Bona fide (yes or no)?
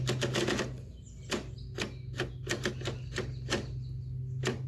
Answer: yes